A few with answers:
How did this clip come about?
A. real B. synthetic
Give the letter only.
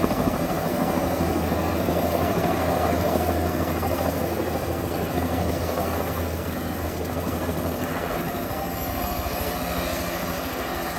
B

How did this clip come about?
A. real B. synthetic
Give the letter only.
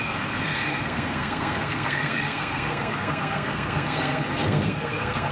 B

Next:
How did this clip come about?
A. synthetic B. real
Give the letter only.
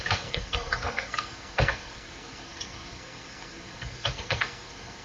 A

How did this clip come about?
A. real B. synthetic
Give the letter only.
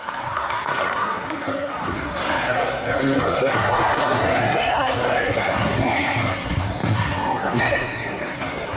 B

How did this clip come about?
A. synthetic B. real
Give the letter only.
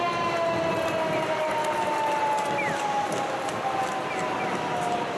B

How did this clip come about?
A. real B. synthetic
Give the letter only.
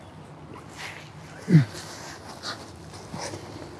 A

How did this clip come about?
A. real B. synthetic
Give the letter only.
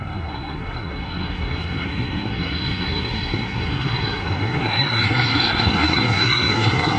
B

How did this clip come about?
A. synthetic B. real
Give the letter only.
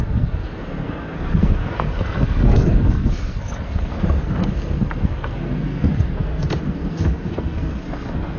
A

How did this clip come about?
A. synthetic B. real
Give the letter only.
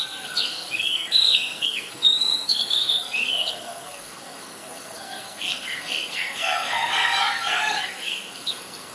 A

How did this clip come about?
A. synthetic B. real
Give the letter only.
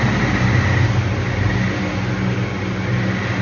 B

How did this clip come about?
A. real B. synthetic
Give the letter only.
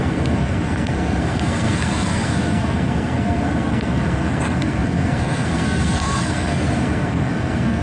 B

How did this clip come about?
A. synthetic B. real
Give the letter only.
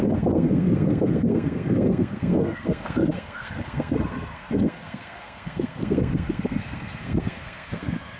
A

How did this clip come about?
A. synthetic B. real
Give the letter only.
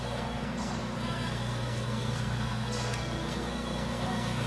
A